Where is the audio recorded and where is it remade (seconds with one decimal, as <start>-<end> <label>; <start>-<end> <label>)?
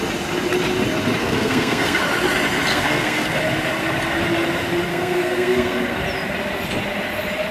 0.0-1.2 recorded; 1.2-2.0 remade; 2.0-2.7 recorded; 2.7-3.4 remade; 3.4-4.9 recorded; 4.9-6.0 remade; 6.0-7.5 recorded